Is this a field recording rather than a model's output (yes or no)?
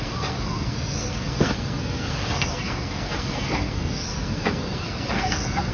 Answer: no